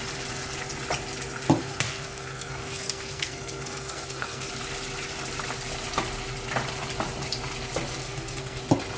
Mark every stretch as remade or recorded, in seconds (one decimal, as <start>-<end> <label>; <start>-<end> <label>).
0.0-1.6 recorded; 1.6-4.5 remade; 4.5-8.0 recorded; 8.0-8.6 remade; 8.6-9.0 recorded